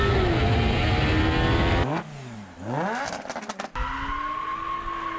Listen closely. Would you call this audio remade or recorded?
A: recorded